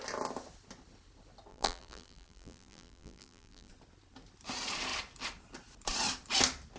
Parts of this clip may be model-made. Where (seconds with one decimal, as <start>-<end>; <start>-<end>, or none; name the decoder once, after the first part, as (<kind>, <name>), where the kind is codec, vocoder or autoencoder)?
1.5-3.7 (vocoder, BigVGAN v2)